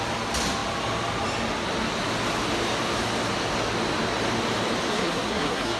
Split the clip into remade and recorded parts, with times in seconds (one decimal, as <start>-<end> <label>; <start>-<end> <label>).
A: 0.0-4.9 recorded; 4.9-5.8 remade

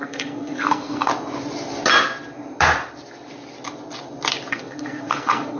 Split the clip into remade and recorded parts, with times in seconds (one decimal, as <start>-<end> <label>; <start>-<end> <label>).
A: 0.0-1.1 remade; 1.1-4.5 recorded; 4.5-5.6 remade

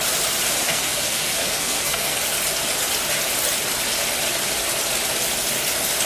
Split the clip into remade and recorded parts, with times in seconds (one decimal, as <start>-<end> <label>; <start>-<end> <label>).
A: 0.0-0.6 recorded; 0.6-2.2 remade; 2.2-6.0 recorded

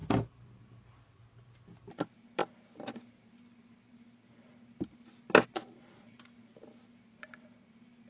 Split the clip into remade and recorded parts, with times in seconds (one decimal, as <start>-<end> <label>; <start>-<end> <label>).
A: 0.0-8.1 recorded

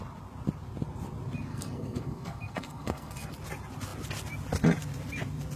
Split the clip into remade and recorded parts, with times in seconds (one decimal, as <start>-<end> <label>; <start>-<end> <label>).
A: 0.0-1.5 recorded; 1.5-3.3 remade; 3.3-5.6 recorded

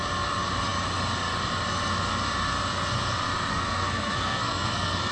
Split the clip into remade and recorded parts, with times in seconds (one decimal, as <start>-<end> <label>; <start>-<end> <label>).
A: 0.0-3.5 recorded; 3.5-5.1 remade

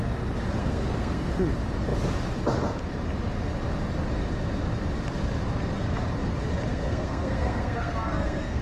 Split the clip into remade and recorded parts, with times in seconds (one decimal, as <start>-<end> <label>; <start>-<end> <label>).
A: 0.0-0.6 recorded; 0.6-1.3 remade; 1.3-6.7 recorded; 6.7-8.6 remade

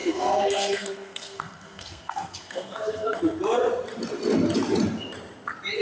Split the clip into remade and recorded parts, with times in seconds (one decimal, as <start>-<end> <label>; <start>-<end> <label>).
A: 0.0-3.2 remade; 3.2-5.8 recorded